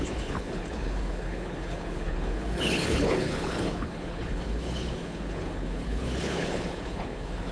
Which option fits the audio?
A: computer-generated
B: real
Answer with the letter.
A